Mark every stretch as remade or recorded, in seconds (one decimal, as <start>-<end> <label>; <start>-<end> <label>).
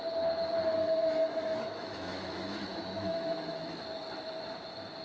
0.0-0.8 recorded; 0.8-3.8 remade; 3.8-5.0 recorded